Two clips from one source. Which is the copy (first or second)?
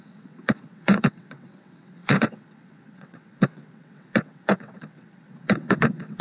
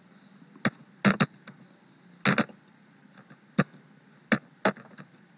first